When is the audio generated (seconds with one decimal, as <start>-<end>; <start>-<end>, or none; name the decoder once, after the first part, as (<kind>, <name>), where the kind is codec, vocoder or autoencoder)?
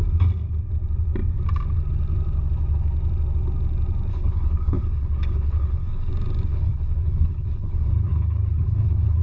4.1-6.1 (codec, HILCodec); 6.5-9.2